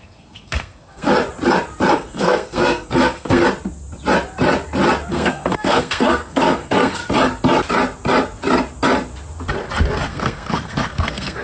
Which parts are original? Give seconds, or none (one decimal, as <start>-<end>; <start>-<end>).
1.1-1.9; 3.4-5.1; 7.0-10.1